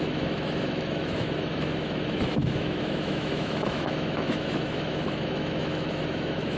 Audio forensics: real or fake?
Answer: fake